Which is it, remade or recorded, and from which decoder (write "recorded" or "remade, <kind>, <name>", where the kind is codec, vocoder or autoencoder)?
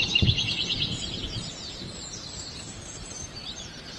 remade, vocoder, BigVGAN v2